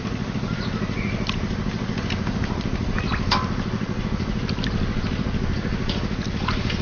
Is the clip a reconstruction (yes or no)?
no